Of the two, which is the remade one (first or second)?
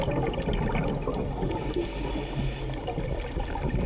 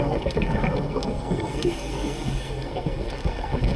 second